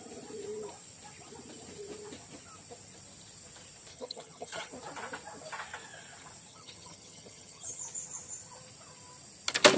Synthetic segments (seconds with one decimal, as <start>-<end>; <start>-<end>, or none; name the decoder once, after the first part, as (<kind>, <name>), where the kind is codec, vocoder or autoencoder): 3.9-4.7 (vocoder, HiFi-GAN); 6.5-7.8